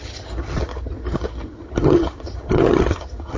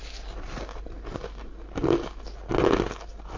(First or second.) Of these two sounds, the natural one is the second